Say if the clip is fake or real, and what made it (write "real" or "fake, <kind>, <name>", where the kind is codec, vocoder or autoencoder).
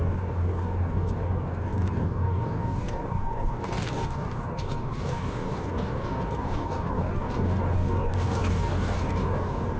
fake, codec, DAC